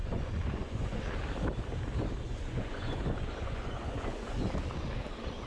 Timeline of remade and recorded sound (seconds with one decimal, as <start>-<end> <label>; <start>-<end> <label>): 0.0-1.0 remade; 1.0-2.3 recorded; 2.3-4.5 remade; 4.5-5.5 recorded